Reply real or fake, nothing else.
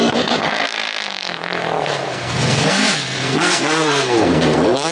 fake